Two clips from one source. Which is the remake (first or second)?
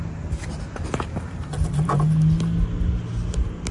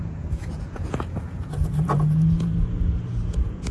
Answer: second